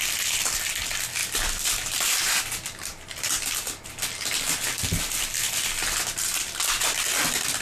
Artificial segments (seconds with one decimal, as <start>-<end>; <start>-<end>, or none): 1.2-2.4; 2.9-3.9